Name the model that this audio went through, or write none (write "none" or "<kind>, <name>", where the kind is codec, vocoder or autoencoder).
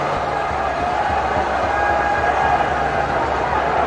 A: none